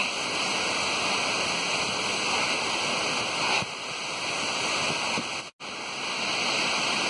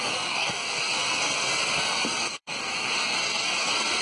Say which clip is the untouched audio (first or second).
first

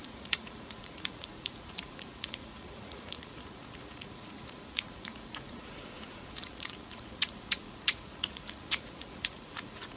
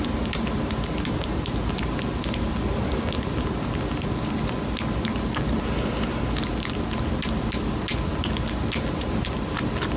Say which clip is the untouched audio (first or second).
second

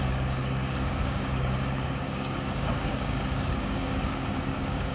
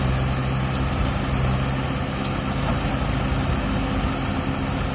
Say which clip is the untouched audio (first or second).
second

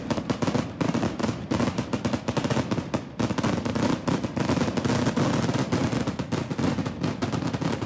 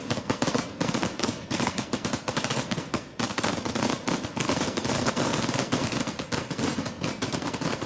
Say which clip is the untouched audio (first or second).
first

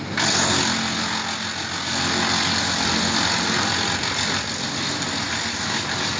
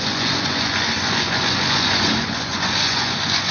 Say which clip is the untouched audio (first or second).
first